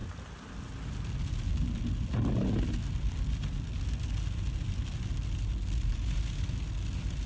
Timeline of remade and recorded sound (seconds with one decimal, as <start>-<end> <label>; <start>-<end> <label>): 0.0-7.3 recorded